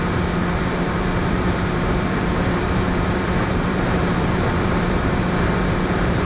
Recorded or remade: remade